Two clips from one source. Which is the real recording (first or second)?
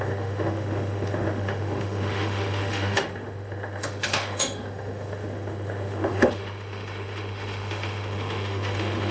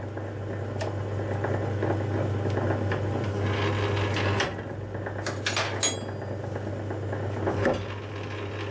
second